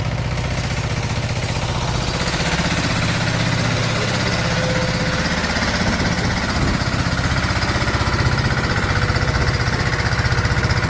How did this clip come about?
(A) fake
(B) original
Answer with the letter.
B